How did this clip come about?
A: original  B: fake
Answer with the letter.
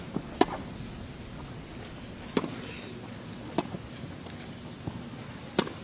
A